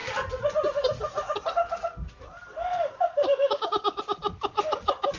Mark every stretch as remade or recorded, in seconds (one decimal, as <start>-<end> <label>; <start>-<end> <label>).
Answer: 0.0-2.7 recorded; 2.7-4.0 remade; 4.0-5.2 recorded